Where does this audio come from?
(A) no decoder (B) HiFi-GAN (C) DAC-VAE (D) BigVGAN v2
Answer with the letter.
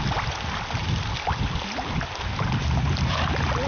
A